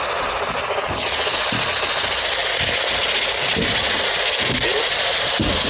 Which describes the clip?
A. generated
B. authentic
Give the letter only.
B